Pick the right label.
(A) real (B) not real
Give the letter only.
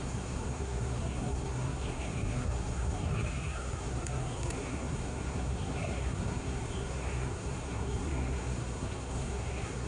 B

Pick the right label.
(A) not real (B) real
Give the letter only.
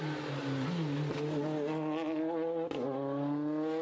B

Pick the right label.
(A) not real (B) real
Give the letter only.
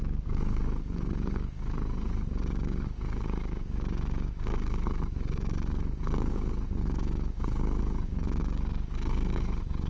A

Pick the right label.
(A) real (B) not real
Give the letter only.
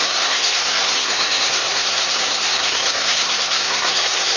B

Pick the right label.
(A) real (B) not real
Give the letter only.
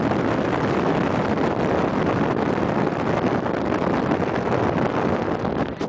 A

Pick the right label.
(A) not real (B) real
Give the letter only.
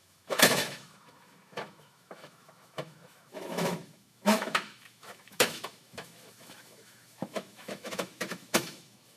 A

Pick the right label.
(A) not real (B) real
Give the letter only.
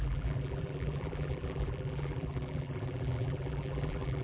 A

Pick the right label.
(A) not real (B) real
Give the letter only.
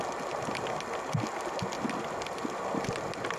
B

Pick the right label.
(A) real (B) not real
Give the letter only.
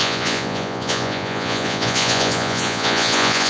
B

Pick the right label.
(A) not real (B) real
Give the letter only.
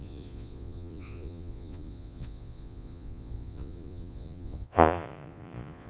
A